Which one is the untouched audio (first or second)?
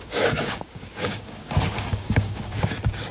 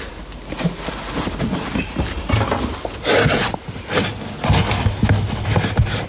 second